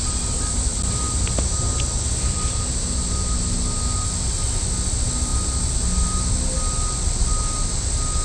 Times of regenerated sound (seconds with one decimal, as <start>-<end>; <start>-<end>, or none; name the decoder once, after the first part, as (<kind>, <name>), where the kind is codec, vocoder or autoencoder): none